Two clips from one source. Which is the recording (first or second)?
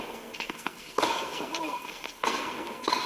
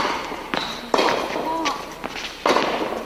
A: second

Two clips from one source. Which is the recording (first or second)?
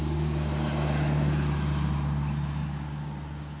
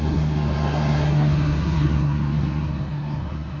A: first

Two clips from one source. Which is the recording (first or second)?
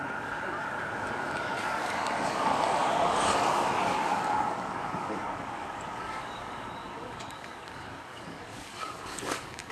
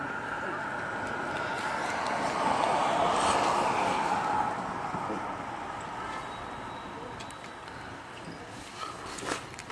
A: second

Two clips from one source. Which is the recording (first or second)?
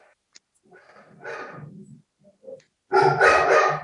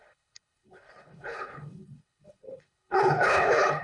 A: first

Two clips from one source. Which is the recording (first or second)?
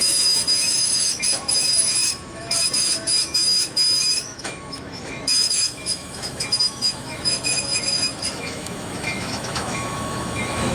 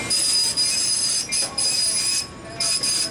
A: second